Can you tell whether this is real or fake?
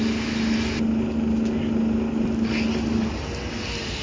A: real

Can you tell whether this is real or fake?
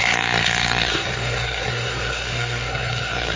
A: fake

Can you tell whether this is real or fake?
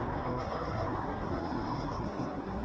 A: fake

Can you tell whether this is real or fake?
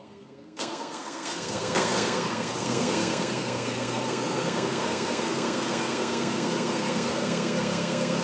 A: fake